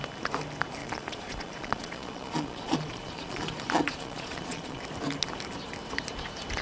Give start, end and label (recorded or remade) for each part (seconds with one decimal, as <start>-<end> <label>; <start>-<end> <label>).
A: 0.0-0.8 recorded; 0.8-4.8 remade; 4.8-6.6 recorded